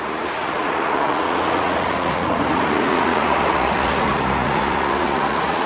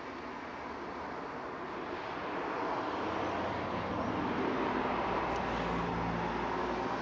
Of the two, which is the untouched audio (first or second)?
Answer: second